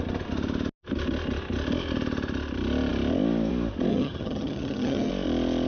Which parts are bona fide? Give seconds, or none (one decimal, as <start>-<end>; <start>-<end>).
0.0-3.9; 5.1-5.7